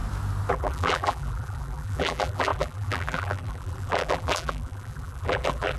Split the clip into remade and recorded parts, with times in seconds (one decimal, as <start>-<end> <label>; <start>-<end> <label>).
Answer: 0.0-0.5 recorded; 0.5-5.8 remade